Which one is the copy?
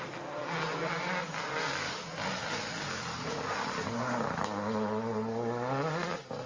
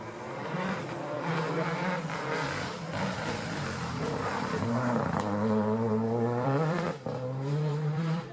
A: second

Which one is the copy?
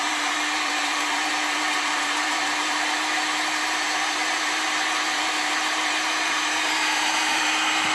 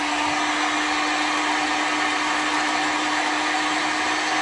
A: first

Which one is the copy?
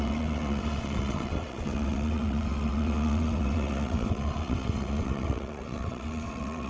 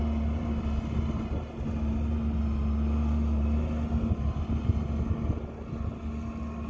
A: first